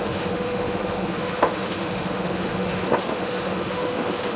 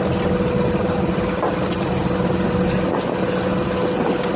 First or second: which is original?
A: second